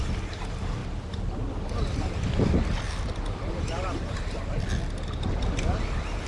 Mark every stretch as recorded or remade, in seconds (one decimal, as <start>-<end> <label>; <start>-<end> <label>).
0.0-6.3 recorded